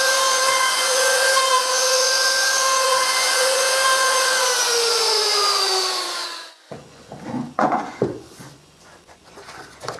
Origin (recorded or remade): remade